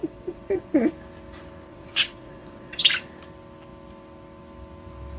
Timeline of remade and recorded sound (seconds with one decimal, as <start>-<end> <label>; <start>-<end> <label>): 0.0-0.9 remade; 0.9-1.7 recorded; 1.7-2.9 remade; 2.9-5.2 recorded